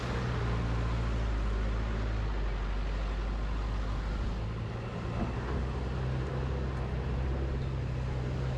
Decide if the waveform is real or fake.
real